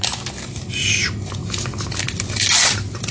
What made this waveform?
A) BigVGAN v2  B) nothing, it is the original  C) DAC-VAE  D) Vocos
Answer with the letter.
B